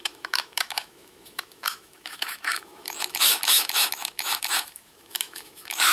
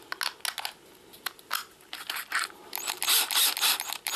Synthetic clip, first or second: first